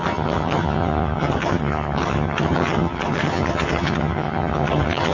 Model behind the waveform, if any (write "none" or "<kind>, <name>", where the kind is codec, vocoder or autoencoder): vocoder, HiFi-GAN